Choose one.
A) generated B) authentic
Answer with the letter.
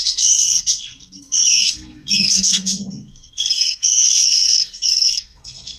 A